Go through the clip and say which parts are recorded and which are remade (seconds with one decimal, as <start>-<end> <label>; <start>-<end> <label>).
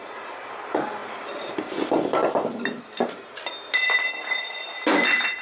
0.0-5.4 recorded